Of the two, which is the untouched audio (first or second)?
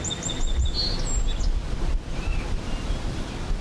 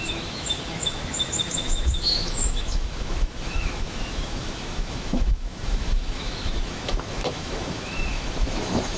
first